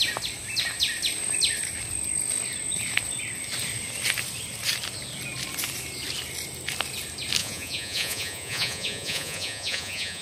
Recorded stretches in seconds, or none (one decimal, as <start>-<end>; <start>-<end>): 0.0-7.4